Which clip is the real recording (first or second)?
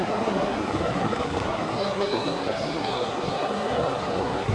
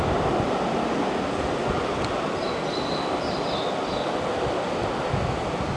second